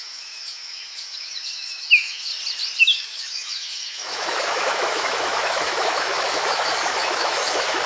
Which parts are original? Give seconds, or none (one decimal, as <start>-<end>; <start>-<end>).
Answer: 2.3-2.8

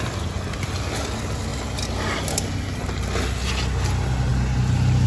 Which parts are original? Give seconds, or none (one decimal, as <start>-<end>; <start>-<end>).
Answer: 0.0-5.1